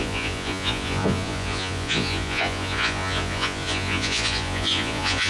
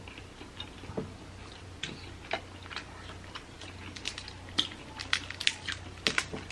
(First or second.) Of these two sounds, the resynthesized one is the first